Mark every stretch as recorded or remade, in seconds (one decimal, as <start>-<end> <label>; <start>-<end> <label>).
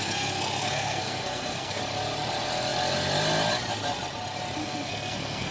0.0-1.8 remade; 1.8-4.6 recorded; 4.6-5.5 remade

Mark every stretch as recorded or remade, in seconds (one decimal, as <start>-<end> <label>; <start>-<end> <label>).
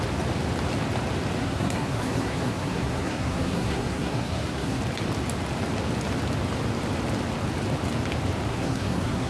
0.0-1.4 recorded; 1.4-4.8 remade; 4.8-8.5 recorded; 8.5-9.3 remade